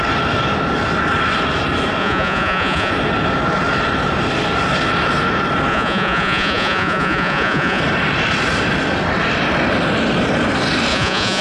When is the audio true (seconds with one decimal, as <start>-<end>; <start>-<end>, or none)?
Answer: 0.0-2.0; 2.9-5.7; 7.8-10.9